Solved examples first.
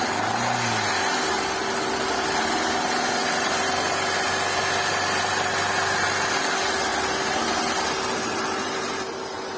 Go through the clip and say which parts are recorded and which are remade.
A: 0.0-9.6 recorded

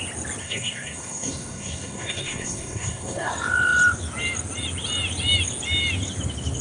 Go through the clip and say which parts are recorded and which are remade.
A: 0.0-0.4 recorded; 0.4-3.3 remade; 3.3-6.6 recorded

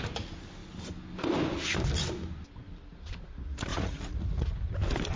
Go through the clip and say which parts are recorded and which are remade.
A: 0.0-3.7 recorded; 3.7-4.6 remade; 4.6-5.2 recorded

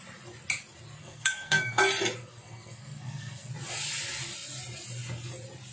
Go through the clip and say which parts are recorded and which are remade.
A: 0.0-1.0 recorded; 1.0-1.8 remade; 1.8-2.2 recorded; 2.2-3.5 remade; 3.5-5.7 recorded

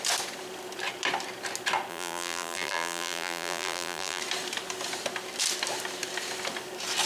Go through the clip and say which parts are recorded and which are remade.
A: 0.0-1.9 recorded; 1.9-4.2 remade; 4.2-7.1 recorded